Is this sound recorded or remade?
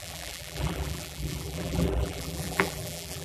remade